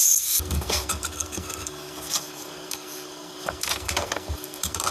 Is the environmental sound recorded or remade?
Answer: remade